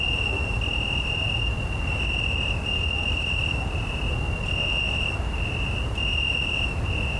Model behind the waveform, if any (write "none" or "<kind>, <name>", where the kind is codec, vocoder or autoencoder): none